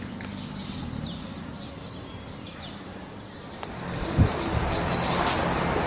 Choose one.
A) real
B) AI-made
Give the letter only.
A